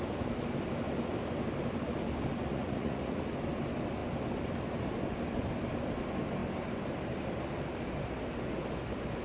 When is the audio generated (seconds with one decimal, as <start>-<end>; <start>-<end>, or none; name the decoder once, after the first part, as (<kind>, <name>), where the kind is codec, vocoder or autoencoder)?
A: 2.5-3.2 (vocoder, Vocos)

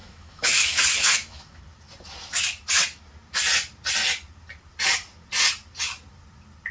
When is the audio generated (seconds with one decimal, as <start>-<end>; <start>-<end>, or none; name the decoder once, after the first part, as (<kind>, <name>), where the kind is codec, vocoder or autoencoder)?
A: 0.0-1.6 (autoencoder, DAC-VAE)

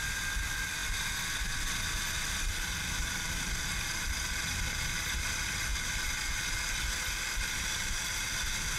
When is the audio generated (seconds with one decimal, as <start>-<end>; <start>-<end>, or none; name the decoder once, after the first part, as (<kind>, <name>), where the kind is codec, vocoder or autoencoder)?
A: none

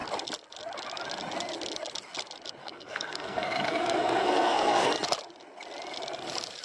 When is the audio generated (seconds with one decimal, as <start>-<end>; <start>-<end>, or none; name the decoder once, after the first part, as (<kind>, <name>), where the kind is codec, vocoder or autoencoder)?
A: 2.6-4.9 (codec, SNAC)

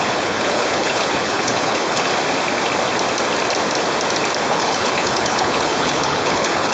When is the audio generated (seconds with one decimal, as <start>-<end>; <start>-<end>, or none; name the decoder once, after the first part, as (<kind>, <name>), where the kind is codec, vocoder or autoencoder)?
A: 0.0-2.1 (codec, HILCodec); 4.5-6.7

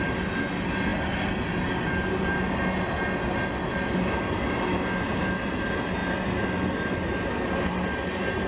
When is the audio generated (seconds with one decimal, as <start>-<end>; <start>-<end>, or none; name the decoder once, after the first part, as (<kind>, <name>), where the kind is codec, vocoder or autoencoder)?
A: none

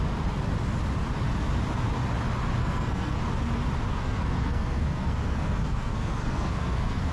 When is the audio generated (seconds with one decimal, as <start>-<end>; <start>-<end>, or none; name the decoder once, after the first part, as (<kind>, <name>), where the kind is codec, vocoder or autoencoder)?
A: 2.6-3.2 (codec, SNAC); 3.9-7.1

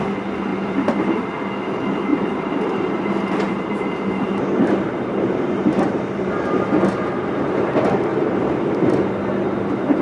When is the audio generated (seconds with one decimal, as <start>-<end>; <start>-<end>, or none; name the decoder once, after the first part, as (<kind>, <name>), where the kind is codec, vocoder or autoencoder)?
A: 0.5-1.3 (vocoder, BigVGAN v2); 2.1-7.3; 8.1-8.6